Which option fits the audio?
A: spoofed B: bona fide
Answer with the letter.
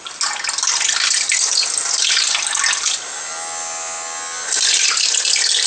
B